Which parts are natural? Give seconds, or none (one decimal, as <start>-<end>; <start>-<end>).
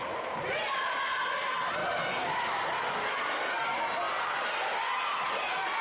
0.0-5.8